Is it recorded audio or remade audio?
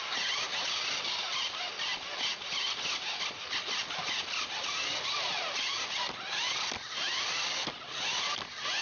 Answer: recorded